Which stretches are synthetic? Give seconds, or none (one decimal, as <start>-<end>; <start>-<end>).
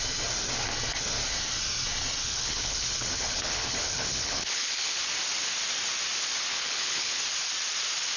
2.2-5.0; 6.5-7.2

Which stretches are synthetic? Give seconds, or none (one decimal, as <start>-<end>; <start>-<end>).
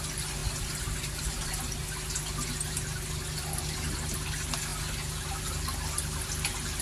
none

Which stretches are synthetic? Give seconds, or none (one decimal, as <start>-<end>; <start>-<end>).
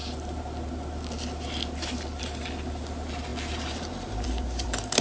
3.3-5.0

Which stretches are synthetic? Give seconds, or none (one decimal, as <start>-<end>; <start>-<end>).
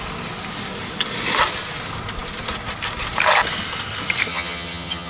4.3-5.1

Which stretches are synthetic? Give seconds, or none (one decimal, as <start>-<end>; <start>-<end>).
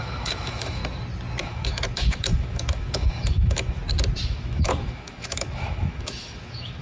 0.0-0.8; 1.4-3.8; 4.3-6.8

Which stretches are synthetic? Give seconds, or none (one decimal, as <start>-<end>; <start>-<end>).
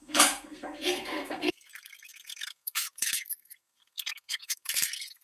0.0-5.2